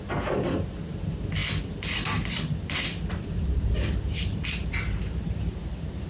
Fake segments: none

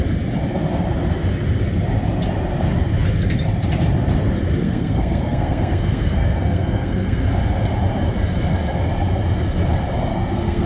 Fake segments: 4.6-7.2 (codec, SNAC); 10.1-10.7